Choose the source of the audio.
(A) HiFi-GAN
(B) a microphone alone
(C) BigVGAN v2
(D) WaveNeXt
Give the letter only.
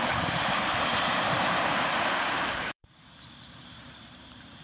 C